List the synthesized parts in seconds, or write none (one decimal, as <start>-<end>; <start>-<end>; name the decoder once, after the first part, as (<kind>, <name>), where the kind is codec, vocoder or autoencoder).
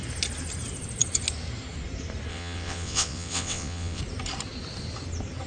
2.3-4.0 (vocoder, WaveNeXt)